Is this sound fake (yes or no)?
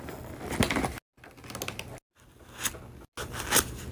no